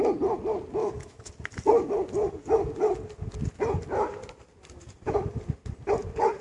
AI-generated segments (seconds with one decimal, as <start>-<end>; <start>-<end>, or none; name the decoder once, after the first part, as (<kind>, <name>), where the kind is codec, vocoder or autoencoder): 0.8-1.3 (autoencoder, DAC-VAE)

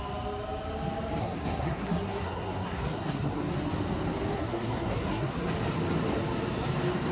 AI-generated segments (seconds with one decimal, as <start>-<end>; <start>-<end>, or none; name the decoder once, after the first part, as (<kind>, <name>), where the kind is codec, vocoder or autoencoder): 1.2-3.4 (codec, SNAC); 4.3-5.5

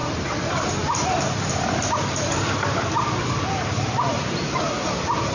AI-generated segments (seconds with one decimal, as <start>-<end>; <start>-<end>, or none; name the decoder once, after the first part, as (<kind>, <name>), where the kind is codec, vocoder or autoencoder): 0.0-3.2 (vocoder, BigVGAN v2); 4.1-4.7